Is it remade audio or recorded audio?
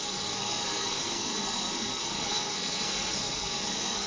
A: remade